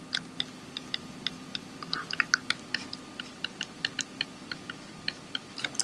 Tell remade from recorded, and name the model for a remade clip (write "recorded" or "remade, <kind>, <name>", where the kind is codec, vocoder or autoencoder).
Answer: recorded